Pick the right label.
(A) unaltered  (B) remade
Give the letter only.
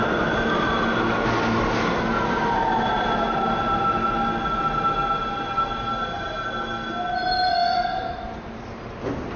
A